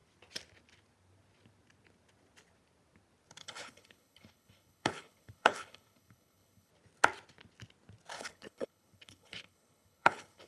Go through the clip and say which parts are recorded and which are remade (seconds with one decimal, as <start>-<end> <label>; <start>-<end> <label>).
0.0-3.4 recorded; 3.4-6.7 remade; 6.7-8.1 recorded; 8.1-10.5 remade